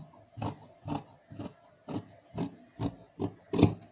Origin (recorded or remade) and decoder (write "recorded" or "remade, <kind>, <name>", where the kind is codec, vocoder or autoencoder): recorded